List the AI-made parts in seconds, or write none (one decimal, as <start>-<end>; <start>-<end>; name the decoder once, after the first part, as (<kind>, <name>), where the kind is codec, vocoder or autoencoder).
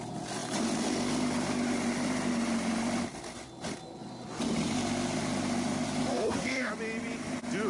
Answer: 6.1-6.7 (codec, SNAC)